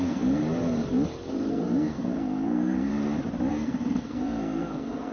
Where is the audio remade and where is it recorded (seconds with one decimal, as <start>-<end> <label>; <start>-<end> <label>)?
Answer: 0.0-0.4 remade; 0.4-1.5 recorded; 1.5-2.9 remade; 2.9-3.5 recorded; 3.5-5.1 remade